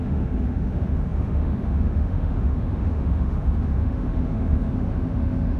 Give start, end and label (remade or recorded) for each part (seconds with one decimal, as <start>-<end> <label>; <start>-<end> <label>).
0.0-5.6 remade

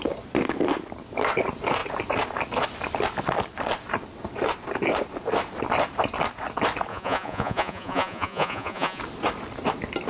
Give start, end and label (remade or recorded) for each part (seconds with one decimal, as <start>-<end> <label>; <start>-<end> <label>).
0.0-6.9 recorded; 6.9-9.0 remade; 9.0-10.1 recorded

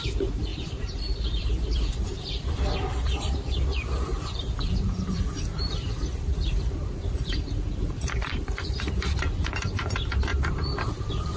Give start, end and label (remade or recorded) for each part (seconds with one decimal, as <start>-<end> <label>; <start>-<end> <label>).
0.0-0.5 recorded; 0.5-3.6 remade; 3.6-4.1 recorded; 4.1-9.1 remade; 9.1-10.3 recorded; 10.3-11.4 remade

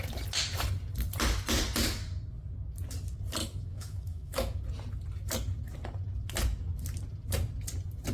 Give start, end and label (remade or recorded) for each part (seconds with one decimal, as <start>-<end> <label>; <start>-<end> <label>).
0.0-3.4 recorded; 3.4-4.6 remade; 4.6-8.1 recorded